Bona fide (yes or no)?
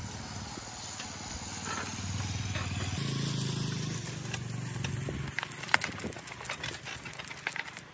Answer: yes